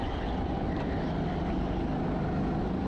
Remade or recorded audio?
recorded